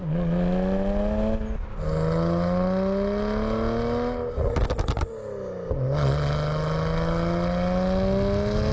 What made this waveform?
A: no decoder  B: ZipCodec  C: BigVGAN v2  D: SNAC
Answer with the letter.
A